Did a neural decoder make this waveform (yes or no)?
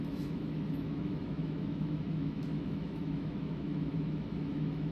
yes